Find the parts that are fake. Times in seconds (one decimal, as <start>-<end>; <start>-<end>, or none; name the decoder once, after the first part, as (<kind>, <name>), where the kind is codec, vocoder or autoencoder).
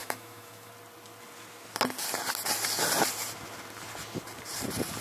0.0-0.7 (autoencoder, DAC-VAE)